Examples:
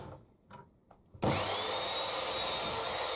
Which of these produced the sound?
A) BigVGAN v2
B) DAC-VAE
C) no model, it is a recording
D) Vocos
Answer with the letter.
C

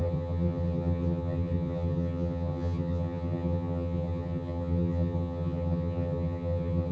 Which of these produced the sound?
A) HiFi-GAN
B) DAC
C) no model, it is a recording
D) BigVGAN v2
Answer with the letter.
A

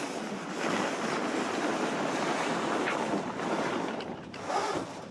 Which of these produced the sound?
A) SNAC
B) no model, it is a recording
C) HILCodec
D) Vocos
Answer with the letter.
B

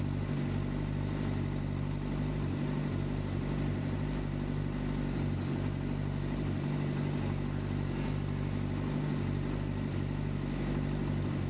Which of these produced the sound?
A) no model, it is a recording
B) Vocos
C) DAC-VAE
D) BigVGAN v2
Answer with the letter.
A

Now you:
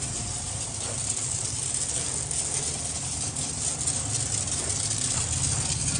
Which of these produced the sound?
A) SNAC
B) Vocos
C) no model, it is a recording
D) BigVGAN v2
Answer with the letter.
C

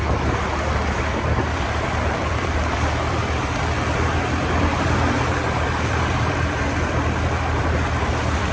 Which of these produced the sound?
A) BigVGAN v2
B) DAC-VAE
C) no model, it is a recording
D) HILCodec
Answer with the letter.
A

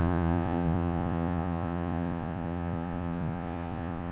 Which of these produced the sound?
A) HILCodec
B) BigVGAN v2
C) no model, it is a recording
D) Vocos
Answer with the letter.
D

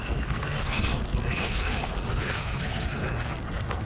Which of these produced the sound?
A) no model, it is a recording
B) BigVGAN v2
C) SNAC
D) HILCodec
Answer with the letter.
C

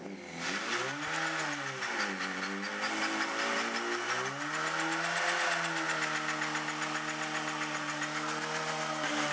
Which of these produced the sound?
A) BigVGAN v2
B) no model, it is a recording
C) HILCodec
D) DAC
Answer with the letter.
B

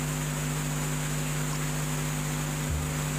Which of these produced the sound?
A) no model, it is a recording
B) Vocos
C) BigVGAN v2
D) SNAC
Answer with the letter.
A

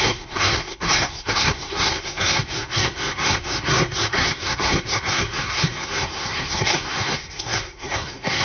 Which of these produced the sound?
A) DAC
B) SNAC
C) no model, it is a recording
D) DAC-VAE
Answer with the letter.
B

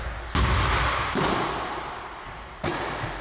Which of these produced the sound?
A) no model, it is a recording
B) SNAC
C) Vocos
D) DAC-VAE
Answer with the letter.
A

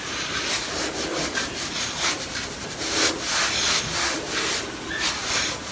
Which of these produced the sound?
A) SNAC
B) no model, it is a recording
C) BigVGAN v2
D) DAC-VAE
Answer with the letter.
B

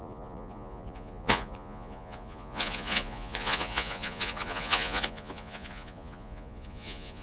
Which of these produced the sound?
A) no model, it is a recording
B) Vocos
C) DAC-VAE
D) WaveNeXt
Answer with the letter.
B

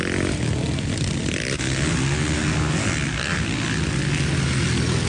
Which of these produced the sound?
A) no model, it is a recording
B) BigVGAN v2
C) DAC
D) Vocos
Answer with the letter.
A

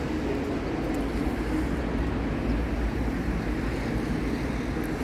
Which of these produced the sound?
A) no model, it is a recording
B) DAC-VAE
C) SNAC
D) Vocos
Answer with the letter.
A